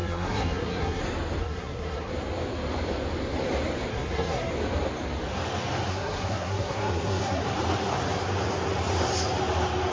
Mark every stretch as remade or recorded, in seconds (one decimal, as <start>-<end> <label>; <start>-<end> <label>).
0.0-1.0 remade; 1.0-1.4 recorded; 1.4-2.1 remade; 2.1-3.9 recorded; 3.9-4.5 remade; 4.5-5.9 recorded; 5.9-7.4 remade; 7.4-9.9 recorded